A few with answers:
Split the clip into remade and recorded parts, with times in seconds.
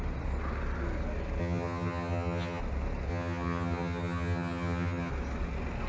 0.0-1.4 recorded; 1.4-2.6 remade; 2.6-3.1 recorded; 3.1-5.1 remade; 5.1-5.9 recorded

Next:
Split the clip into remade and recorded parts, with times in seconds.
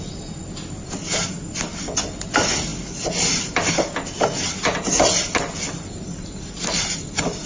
0.0-7.5 recorded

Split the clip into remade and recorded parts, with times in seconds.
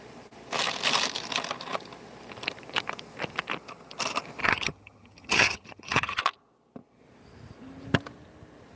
0.0-4.4 recorded; 4.4-6.2 remade; 6.2-8.8 recorded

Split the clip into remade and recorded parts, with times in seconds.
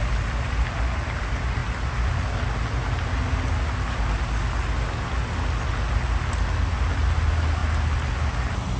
0.0-8.8 recorded